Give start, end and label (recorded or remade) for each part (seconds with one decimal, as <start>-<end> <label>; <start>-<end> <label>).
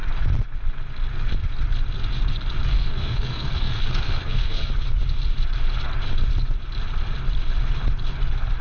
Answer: 0.0-2.7 recorded; 2.7-4.7 remade; 4.7-8.6 recorded